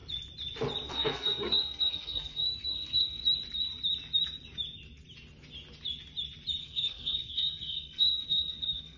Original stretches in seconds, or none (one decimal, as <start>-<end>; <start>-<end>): 0.0-0.9; 3.2-6.6